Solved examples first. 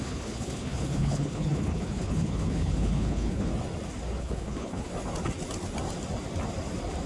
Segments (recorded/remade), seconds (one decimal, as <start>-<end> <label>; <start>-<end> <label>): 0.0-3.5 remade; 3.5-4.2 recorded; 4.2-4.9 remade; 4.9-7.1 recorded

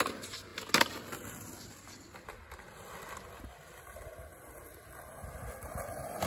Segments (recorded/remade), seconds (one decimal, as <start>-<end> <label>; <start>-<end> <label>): 0.0-6.3 recorded

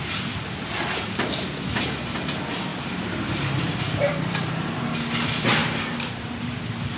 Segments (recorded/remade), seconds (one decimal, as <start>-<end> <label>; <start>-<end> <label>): 0.0-2.7 recorded; 2.7-4.8 remade; 4.8-5.6 recorded; 5.6-6.6 remade; 6.6-7.0 recorded